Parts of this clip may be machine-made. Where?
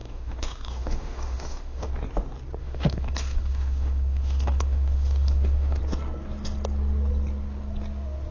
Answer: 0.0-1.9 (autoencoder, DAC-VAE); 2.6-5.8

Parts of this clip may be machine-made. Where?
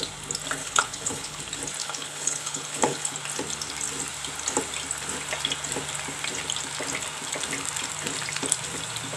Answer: 0.6-1.4 (codec, HILCodec); 1.8-3.1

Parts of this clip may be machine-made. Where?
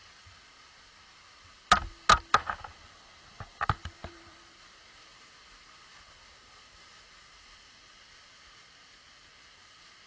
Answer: 4.0-4.8 (vocoder, BigVGAN v2)